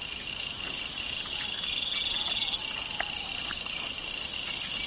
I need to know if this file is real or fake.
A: real